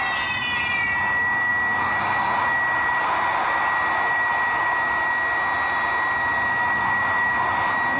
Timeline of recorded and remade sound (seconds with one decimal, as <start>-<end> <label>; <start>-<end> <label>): 0.0-8.0 recorded

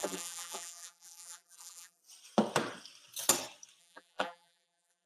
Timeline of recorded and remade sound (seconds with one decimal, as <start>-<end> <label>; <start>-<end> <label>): 0.0-2.0 remade; 2.0-3.8 recorded; 3.8-5.1 remade

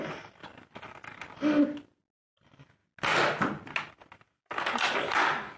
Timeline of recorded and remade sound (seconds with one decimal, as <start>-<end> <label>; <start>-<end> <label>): 0.0-5.6 recorded

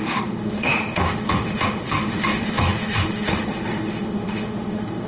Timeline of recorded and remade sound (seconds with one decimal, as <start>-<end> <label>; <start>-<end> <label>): 0.0-5.1 remade

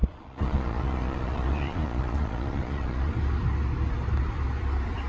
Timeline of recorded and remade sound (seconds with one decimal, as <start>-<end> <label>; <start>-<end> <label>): 0.0-3.1 remade; 3.1-5.1 recorded

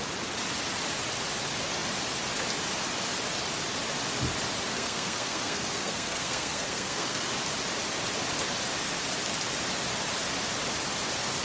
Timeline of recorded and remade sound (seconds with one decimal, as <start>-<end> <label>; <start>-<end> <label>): 0.0-4.7 recorded; 4.7-7.3 remade; 7.3-11.4 recorded

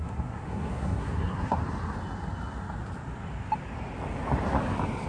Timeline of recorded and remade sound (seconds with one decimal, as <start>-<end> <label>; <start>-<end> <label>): 0.0-1.6 remade; 1.6-5.1 recorded